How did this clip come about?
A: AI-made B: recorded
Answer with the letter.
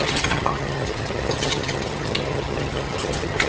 A